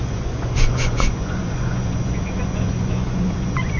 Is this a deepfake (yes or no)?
yes